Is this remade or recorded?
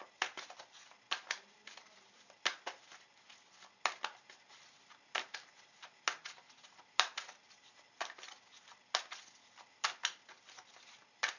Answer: recorded